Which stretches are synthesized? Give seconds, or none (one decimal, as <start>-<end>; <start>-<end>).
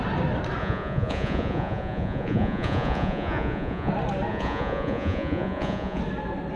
0.6-3.9; 4.3-6.0